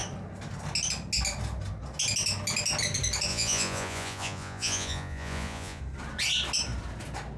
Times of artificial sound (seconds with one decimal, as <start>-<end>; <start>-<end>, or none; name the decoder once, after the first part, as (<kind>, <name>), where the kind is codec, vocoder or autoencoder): 3.3-5.8 (vocoder, Vocos)